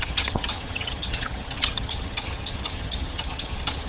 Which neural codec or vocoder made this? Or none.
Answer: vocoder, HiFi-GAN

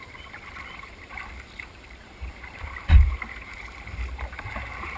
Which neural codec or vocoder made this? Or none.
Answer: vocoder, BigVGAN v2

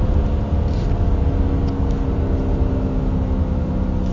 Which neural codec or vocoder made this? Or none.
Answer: none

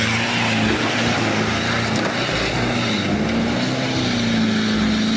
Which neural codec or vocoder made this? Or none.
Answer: none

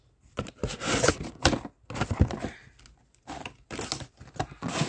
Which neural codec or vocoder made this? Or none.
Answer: none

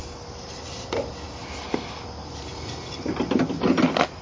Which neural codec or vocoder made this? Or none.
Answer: none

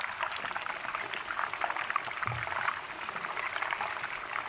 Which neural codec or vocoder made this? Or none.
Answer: none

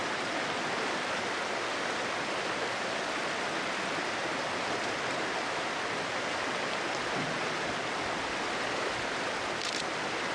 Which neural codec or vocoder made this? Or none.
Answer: none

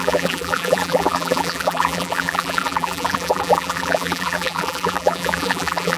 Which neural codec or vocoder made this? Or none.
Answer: vocoder, BigVGAN v2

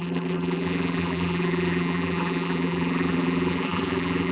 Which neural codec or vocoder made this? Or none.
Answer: vocoder, BigVGAN v2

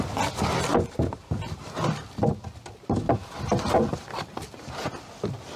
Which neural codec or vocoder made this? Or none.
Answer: none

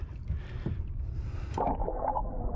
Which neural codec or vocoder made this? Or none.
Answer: none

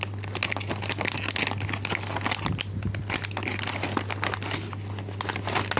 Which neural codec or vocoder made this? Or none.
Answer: none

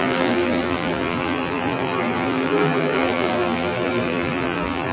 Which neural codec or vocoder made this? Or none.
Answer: vocoder, BigVGAN v2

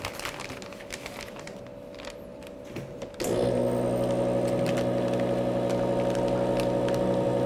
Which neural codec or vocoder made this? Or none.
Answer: none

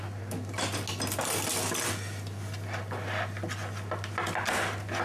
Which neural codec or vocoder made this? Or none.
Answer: none